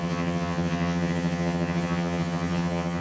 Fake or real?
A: fake